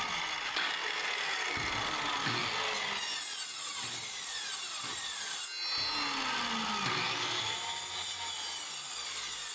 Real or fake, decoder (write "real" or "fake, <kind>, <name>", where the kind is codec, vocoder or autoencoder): real